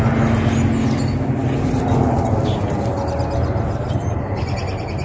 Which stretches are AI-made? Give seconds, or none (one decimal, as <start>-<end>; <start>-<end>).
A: 4.0-4.5